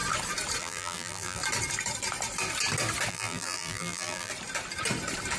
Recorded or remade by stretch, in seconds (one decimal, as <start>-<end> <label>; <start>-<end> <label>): 0.0-0.6 recorded; 0.6-1.4 remade; 1.4-3.1 recorded; 3.1-4.3 remade; 4.3-5.4 recorded